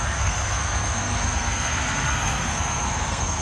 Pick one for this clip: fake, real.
fake